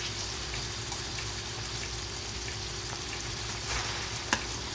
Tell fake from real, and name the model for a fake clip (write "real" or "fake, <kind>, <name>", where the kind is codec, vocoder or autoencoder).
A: fake, vocoder, BigVGAN v2